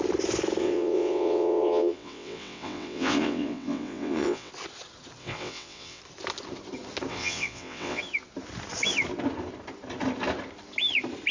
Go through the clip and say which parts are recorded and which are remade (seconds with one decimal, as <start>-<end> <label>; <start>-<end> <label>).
0.0-0.6 recorded; 0.6-4.5 remade; 4.5-5.2 recorded; 5.2-6.0 remade; 6.0-7.1 recorded; 7.1-8.0 remade; 8.0-11.3 recorded